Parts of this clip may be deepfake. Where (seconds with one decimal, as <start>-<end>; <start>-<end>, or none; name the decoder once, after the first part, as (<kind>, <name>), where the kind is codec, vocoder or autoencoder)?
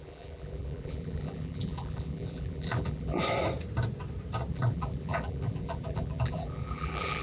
0.0-3.2 (vocoder, BigVGAN v2); 4.5-7.2